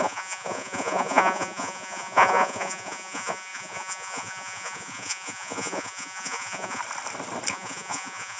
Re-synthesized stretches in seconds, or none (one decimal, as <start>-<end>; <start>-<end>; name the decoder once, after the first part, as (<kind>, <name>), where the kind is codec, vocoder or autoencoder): 0.0-6.8 (vocoder, Vocos); 7.5-8.4